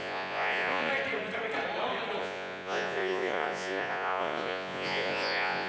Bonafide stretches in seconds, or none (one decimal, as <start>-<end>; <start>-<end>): 0.9-2.2